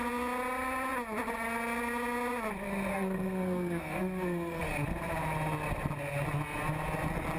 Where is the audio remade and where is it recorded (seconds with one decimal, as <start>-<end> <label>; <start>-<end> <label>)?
0.0-2.9 recorded; 2.9-4.6 remade; 4.6-7.4 recorded